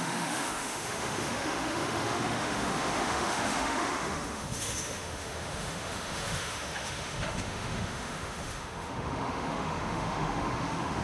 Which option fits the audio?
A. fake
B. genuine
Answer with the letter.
A